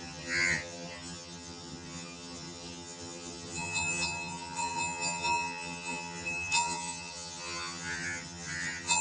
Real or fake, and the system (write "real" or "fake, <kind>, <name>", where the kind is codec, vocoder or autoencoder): fake, vocoder, HiFi-GAN